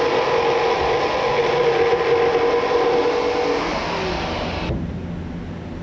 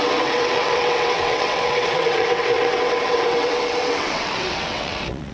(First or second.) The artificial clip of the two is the second